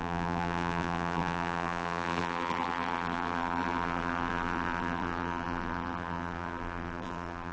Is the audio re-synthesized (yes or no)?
yes